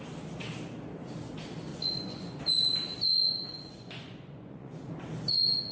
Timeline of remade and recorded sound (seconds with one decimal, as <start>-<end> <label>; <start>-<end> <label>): 0.0-1.7 recorded; 1.7-2.4 remade; 2.4-3.1 recorded; 3.1-4.9 remade; 4.9-5.7 recorded